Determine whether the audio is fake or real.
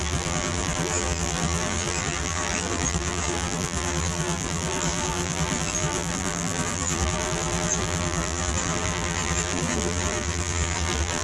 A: fake